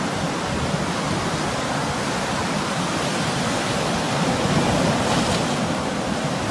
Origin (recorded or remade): recorded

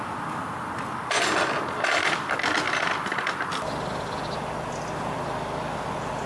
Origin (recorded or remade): recorded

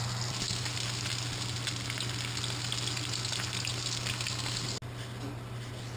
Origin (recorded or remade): recorded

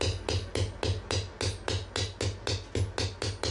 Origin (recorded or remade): recorded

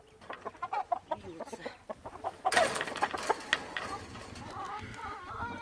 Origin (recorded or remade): recorded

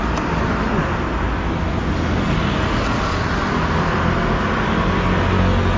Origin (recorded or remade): recorded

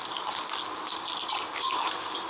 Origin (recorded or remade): recorded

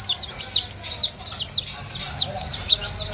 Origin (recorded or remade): recorded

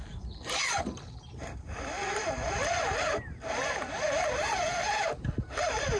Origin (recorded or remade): recorded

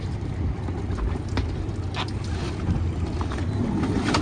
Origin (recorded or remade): recorded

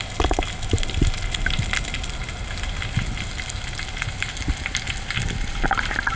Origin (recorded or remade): recorded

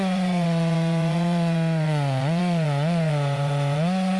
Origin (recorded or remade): remade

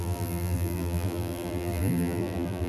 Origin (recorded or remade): remade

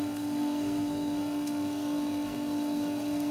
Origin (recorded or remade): remade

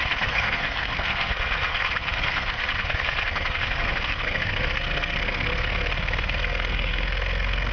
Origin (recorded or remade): remade